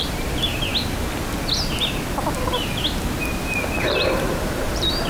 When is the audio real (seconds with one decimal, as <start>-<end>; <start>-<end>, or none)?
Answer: 0.7-3.8